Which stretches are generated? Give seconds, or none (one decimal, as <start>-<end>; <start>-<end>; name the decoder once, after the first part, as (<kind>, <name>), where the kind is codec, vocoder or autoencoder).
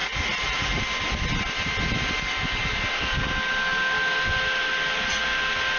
0.0-0.8 (vocoder, Vocos)